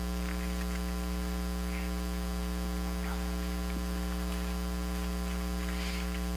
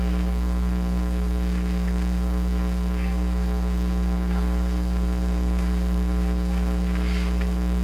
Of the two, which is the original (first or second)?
first